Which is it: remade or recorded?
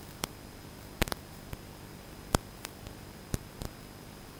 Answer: remade